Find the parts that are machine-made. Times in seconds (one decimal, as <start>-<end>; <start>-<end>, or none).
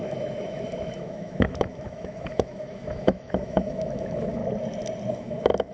0.0-4.4; 5.1-5.7